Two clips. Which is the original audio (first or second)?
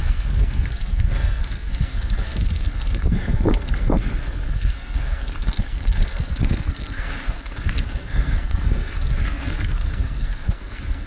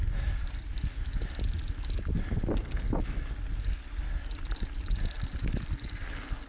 second